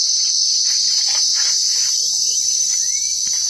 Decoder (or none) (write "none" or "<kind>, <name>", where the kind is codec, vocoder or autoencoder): vocoder, BigVGAN v2